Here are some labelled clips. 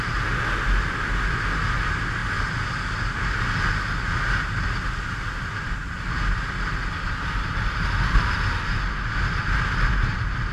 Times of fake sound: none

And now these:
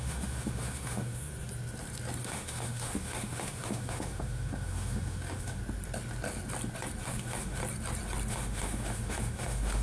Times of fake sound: 0.0-1.3; 2.2-5.6; 7.0-7.6; 8.3-9.8

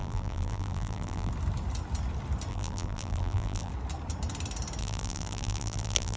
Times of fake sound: 0.0-1.3; 2.5-3.7; 4.8-6.2